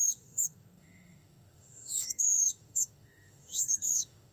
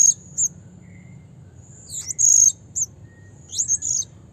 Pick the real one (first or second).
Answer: second